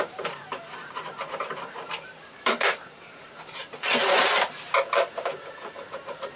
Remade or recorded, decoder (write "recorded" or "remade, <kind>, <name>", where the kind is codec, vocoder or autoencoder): remade, vocoder, BigVGAN v2